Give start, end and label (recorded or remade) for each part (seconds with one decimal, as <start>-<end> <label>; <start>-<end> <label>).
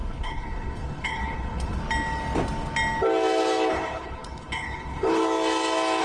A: 0.0-1.8 remade; 1.8-3.7 recorded; 3.7-5.2 remade; 5.2-6.0 recorded